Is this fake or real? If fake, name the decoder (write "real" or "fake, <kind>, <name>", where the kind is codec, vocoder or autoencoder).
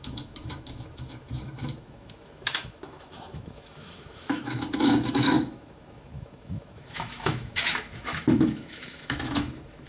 fake, autoencoder, DAC-VAE